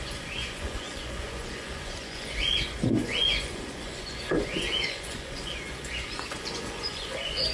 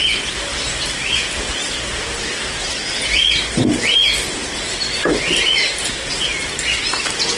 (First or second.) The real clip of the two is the second